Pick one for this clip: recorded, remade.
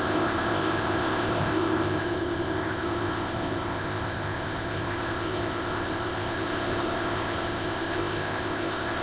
remade